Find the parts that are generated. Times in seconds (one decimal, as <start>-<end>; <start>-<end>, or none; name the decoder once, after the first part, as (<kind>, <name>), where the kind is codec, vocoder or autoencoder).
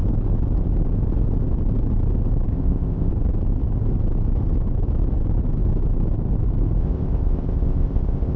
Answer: 2.5-3.1 (codec, ZipCodec); 6.8-8.4